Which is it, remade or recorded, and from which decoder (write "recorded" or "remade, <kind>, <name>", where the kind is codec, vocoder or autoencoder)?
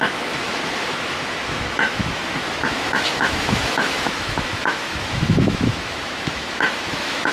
remade, autoencoder, DAC-VAE